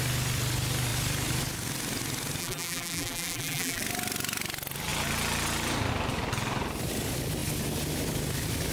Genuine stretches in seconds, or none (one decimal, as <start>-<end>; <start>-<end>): 0.0-2.4; 3.8-8.7